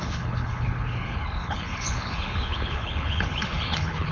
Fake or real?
fake